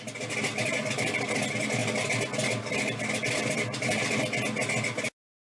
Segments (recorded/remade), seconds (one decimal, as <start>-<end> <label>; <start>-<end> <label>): 0.0-5.5 recorded